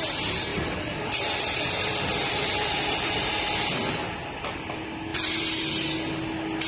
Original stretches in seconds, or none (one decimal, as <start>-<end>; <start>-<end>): 0.0-0.5; 3.3-5.1; 5.6-6.7